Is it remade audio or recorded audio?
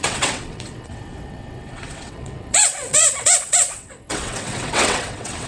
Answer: remade